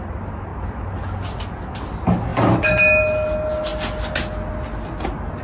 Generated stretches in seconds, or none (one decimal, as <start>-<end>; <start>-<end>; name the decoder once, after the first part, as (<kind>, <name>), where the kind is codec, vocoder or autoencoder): none